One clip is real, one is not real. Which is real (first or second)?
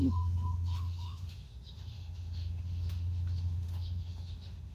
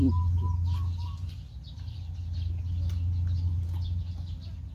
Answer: second